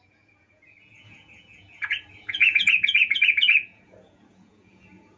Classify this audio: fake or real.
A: fake